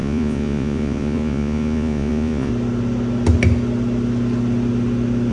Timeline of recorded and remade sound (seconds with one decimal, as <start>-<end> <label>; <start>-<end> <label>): 0.0-2.5 remade; 2.5-5.3 recorded